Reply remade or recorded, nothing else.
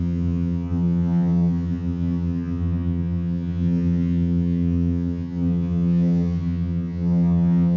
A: remade